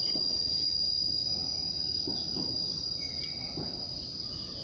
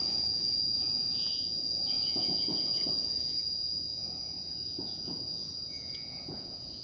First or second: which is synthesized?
second